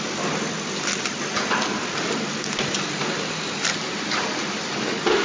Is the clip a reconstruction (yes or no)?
no